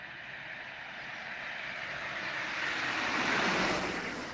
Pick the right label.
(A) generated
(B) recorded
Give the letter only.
B